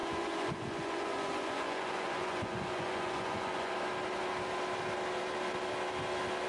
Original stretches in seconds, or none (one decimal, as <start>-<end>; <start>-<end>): 3.7-6.5

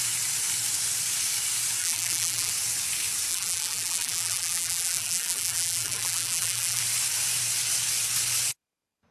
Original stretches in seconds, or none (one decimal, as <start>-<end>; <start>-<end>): 0.0-1.8; 2.5-3.3; 6.8-9.1

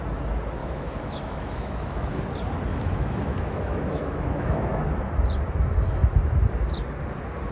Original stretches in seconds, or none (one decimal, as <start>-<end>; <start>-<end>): 0.0-0.6; 2.2-2.7; 4.8-7.5

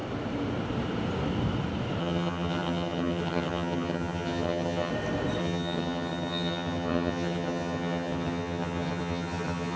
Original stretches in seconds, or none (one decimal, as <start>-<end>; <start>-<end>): 0.0-2.0; 4.9-5.4

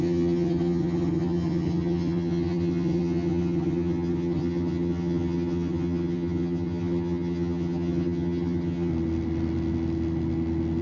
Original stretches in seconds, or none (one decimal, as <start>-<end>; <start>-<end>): 8.9-10.8

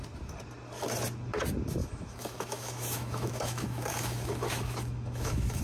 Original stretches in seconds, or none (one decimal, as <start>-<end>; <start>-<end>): 0.0-1.8